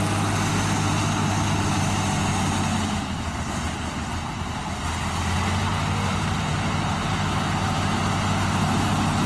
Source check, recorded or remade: recorded